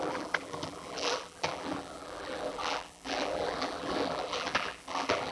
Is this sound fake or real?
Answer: fake